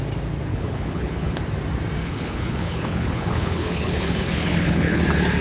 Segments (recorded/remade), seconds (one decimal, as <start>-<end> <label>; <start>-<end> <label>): 0.0-0.5 recorded; 0.5-1.4 remade; 1.4-2.0 recorded; 2.0-5.0 remade; 5.0-5.4 recorded